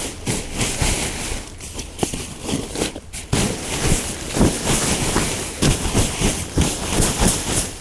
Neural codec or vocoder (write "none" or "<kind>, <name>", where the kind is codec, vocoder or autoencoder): none